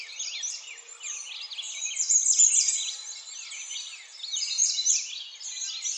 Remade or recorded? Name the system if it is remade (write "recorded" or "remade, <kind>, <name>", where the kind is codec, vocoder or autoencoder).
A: recorded